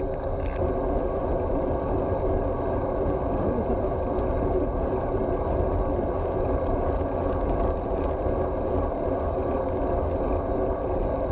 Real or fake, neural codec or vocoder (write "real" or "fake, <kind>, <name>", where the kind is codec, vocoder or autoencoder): real